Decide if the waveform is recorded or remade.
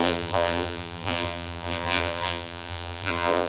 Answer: remade